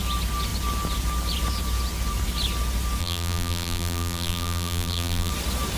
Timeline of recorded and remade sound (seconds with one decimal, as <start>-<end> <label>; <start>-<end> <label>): 0.0-3.0 recorded; 3.0-5.3 remade; 5.3-5.8 recorded